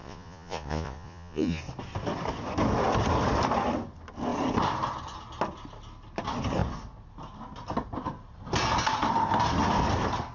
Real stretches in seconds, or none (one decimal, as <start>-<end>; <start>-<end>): 1.6-10.3